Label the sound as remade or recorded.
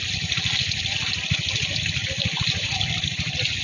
recorded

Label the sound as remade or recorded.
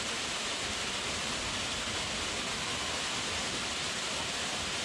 recorded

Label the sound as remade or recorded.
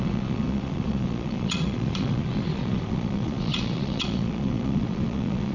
remade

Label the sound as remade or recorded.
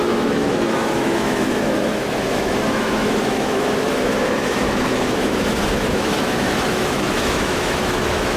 remade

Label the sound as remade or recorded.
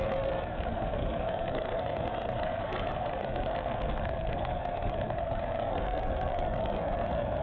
remade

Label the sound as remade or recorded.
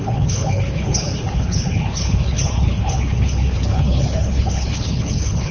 remade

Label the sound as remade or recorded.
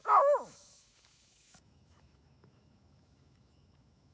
remade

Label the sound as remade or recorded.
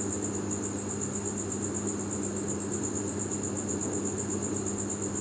recorded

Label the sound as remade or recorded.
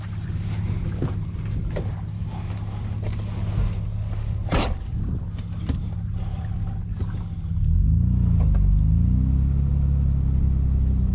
recorded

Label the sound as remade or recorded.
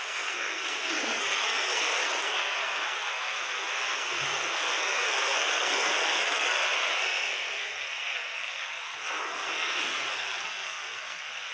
remade